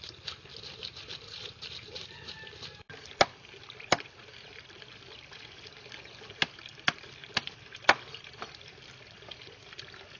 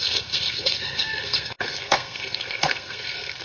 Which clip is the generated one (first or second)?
second